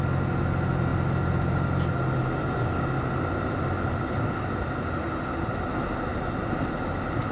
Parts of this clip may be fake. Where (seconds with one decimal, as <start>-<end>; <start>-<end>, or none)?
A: none